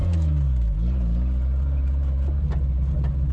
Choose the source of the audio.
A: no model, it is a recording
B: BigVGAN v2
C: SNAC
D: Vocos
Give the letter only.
A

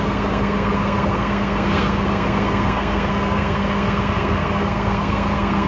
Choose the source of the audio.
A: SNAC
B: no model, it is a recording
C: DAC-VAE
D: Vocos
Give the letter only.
A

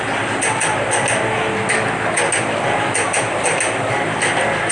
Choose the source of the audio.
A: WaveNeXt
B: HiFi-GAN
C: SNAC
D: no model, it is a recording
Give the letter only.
D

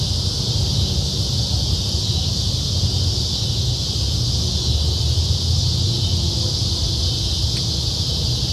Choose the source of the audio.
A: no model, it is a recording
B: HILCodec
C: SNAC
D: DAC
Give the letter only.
A